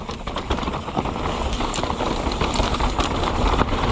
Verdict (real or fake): real